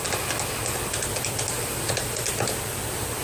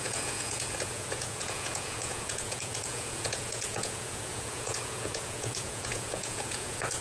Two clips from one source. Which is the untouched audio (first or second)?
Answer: first